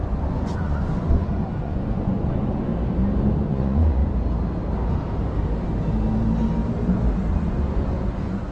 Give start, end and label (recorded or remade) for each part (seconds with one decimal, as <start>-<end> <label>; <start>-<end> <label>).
0.0-2.7 remade; 2.7-3.5 recorded; 3.5-4.0 remade; 4.0-7.3 recorded; 7.3-8.5 remade